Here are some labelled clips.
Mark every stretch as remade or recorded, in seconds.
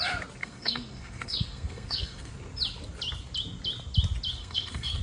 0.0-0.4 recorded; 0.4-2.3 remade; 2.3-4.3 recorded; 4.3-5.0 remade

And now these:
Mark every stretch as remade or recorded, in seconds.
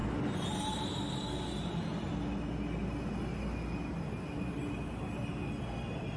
0.0-6.2 recorded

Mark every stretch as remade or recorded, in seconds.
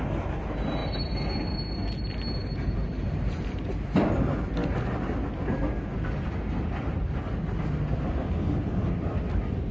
0.0-9.7 recorded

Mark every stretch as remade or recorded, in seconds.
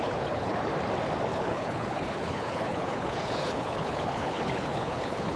0.0-0.7 remade; 0.7-1.3 recorded; 1.3-5.4 remade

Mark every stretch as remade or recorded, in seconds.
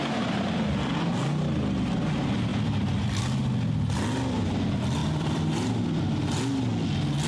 0.0-2.5 recorded; 2.5-3.2 remade; 3.2-5.0 recorded; 5.0-5.7 remade; 5.7-7.3 recorded